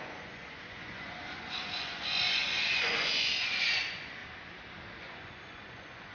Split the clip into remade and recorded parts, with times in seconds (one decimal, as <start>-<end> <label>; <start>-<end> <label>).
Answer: 0.0-4.2 remade; 4.2-5.0 recorded; 5.0-6.1 remade